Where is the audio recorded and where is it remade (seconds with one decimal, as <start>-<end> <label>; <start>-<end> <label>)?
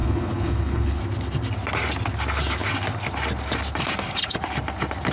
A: 0.0-1.0 remade; 1.0-5.1 recorded